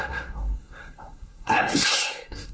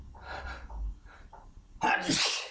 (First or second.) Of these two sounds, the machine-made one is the first